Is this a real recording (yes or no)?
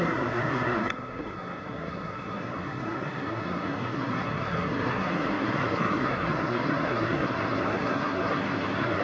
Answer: no